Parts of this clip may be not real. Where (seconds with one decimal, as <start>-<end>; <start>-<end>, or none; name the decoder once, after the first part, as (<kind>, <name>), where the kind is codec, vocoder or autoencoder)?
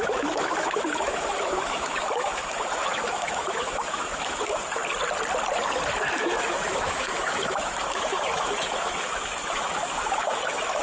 0.0-4.8 (autoencoder, DAC-VAE); 6.2-10.8